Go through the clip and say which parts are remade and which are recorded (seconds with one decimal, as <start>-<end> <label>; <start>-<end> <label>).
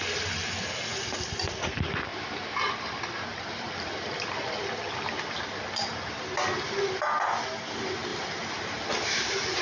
0.0-3.3 recorded; 3.3-4.4 remade; 4.4-8.1 recorded; 8.1-8.9 remade; 8.9-9.6 recorded